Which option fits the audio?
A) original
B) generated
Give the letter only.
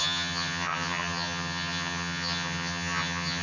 B